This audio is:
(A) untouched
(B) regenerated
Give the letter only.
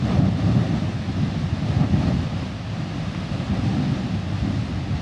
A